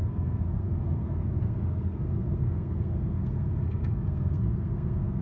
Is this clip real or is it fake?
fake